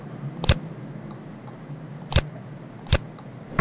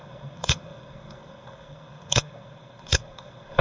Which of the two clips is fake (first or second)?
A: second